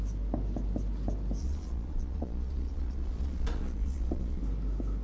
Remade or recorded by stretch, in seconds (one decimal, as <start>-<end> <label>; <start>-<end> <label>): 0.0-1.4 recorded; 1.4-4.4 remade; 4.4-5.0 recorded